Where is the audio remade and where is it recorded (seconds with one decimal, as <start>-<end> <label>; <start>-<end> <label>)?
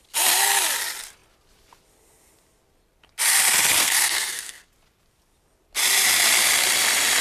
0.0-3.8 recorded; 3.8-4.7 remade; 4.7-7.2 recorded